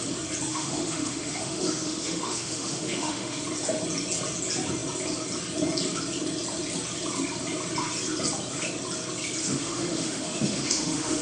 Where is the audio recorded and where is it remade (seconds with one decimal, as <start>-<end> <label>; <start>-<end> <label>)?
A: 0.0-0.5 recorded; 0.5-3.4 remade; 3.4-9.4 recorded; 9.4-11.2 remade